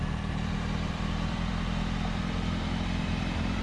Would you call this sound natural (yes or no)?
no